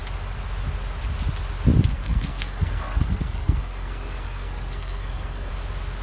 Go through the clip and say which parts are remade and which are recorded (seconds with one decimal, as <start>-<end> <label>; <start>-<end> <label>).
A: 0.0-1.9 recorded; 1.9-5.5 remade; 5.5-6.0 recorded